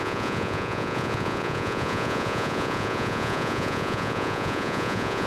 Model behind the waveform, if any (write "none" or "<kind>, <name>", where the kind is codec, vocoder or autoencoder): vocoder, Vocos